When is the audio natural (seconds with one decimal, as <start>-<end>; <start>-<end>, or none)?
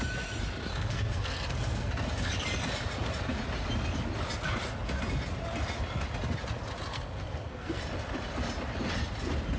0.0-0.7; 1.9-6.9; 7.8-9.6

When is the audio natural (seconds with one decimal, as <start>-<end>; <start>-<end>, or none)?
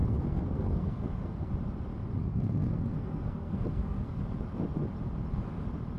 1.5-2.2; 4.2-6.0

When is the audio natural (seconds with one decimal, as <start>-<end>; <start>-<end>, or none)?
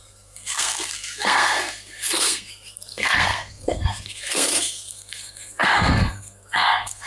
none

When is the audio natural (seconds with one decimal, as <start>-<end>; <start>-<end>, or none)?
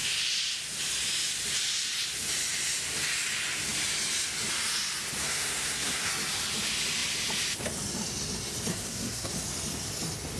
0.0-5.2; 6.1-8.7; 9.3-10.4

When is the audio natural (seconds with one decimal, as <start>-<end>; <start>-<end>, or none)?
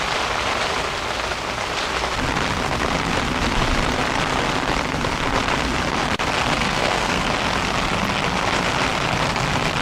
0.0-6.6; 7.2-9.8